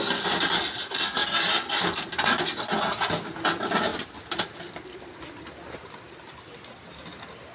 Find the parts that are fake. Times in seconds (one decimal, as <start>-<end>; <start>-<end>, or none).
none